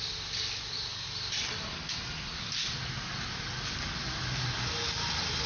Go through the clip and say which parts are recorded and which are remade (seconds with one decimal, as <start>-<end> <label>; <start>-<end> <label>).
0.0-5.5 recorded